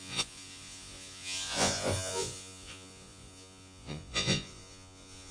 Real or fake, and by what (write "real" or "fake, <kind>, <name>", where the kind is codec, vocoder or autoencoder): fake, vocoder, Vocos